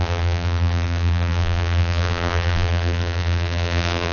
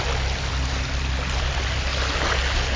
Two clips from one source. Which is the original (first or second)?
second